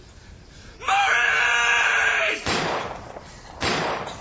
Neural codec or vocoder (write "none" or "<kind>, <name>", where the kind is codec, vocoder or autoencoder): vocoder, BigVGAN v2